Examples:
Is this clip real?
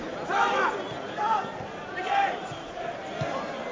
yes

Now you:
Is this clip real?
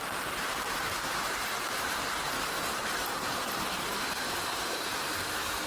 no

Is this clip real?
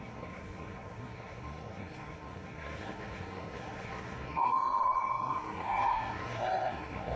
no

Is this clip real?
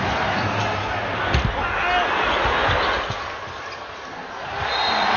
yes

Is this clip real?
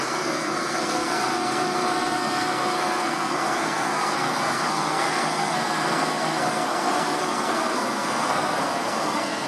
no